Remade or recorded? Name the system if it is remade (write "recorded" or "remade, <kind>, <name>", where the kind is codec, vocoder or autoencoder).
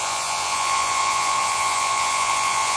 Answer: remade, vocoder, Vocos